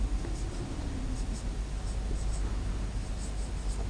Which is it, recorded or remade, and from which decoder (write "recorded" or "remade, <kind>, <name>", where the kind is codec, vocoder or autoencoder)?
recorded